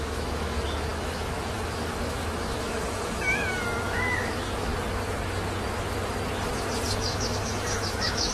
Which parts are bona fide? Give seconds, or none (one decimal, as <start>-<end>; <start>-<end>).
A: 4.7-7.0